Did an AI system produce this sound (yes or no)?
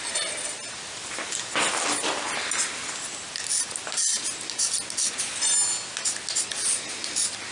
no